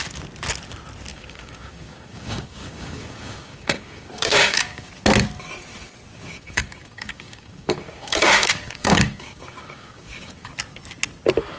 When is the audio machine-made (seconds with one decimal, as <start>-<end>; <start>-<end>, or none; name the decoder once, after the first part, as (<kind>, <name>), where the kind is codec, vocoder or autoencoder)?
1.1-4.9 (codec, DAC); 6.1-10.5